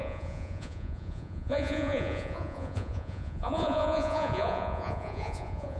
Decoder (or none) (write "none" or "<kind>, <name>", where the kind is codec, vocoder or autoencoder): vocoder, Vocos